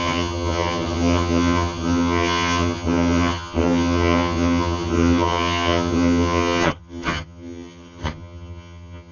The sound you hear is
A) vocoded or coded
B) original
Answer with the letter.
A